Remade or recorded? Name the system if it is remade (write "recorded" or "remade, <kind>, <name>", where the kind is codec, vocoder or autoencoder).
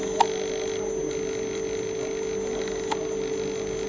recorded